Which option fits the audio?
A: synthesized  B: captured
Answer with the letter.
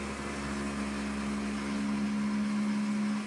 B